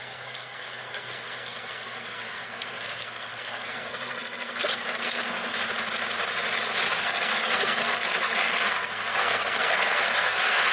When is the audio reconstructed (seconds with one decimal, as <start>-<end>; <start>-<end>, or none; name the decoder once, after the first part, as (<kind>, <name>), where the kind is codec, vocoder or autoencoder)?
0.0-5.5 (codec, SNAC); 7.0-10.7